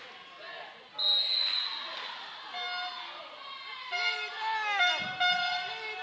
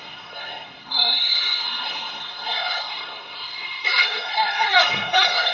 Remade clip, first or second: second